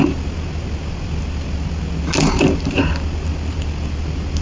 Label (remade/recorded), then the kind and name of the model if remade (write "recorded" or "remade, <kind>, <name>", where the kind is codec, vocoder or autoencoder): recorded